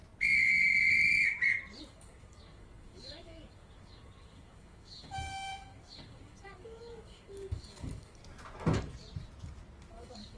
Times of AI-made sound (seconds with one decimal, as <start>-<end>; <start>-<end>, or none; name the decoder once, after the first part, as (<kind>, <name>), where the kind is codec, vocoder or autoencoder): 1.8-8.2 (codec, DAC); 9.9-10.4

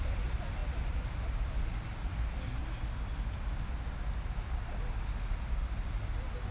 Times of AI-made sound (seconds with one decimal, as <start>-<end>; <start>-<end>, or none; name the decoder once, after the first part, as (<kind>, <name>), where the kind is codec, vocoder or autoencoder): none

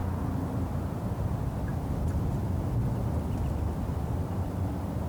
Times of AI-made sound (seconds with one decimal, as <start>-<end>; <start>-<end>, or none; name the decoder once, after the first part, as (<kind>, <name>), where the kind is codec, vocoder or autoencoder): none

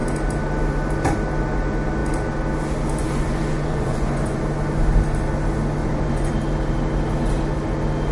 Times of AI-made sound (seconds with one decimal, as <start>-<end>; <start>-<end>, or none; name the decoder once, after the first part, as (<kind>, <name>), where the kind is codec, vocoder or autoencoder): 3.0-4.4 (vocoder, Vocos); 5.8-6.3